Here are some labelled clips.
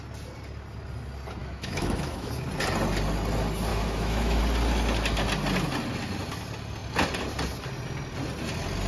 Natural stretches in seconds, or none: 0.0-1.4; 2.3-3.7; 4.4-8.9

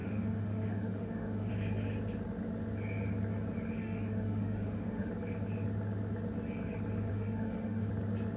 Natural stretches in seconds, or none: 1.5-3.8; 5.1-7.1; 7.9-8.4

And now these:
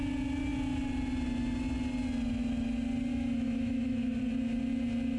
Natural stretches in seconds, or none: 0.0-3.1; 4.2-5.2

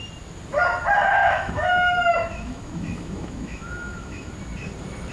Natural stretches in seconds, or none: 0.0-1.2; 4.3-5.1

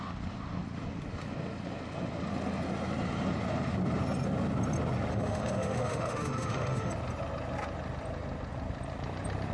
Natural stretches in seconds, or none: 0.0-5.1; 6.9-9.5

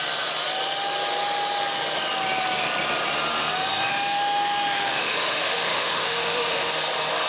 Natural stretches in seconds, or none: 0.0-3.9; 6.7-7.3

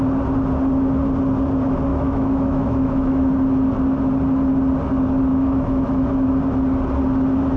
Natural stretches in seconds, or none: 0.0-1.9; 3.3-5.3; 6.3-7.6

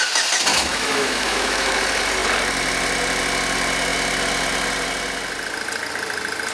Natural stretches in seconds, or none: 0.0-0.5; 1.8-6.5